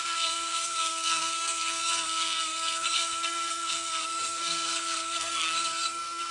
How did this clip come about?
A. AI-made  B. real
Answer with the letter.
A